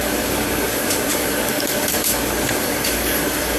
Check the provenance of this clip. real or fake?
fake